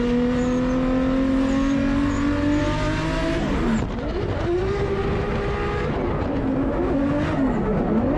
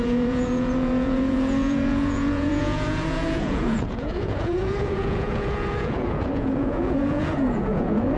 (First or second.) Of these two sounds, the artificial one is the second